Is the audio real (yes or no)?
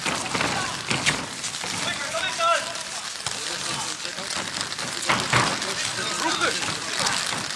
yes